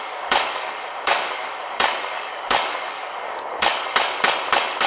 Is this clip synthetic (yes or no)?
yes